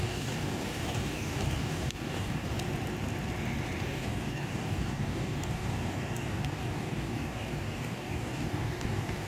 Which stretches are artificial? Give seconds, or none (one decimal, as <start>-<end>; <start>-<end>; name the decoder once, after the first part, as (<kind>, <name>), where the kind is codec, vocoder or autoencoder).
0.0-2.6 (codec, DAC); 3.8-9.3